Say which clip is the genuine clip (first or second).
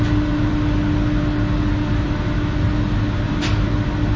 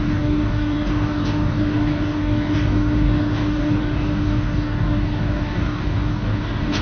first